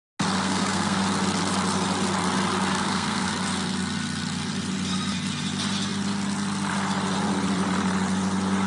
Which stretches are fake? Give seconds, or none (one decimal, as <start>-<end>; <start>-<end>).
0.4-1.0; 2.7-3.3